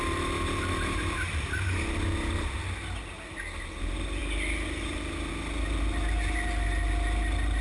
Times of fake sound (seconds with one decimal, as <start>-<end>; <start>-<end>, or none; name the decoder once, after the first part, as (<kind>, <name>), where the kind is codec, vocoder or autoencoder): none